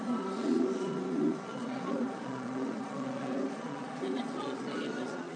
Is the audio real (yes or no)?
no